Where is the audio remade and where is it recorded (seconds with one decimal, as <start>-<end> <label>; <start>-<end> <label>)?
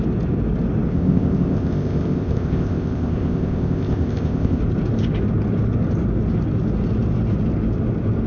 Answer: 0.0-0.9 recorded; 0.9-4.6 remade; 4.6-8.3 recorded